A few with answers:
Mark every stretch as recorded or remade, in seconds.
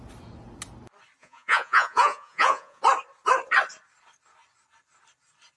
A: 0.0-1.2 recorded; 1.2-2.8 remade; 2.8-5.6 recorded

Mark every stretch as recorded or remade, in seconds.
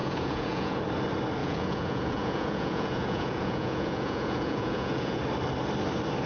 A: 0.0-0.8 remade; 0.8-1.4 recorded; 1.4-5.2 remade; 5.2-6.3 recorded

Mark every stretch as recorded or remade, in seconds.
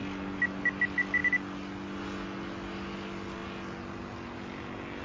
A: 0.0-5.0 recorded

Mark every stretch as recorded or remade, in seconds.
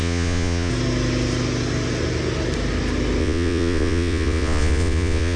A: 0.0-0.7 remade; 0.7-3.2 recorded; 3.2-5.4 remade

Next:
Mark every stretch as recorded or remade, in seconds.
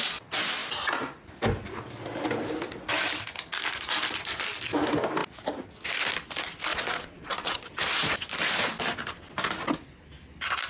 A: 0.0-6.7 recorded; 6.7-7.7 remade; 7.7-10.7 recorded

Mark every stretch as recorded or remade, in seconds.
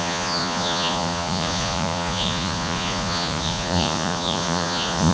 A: 0.0-5.1 remade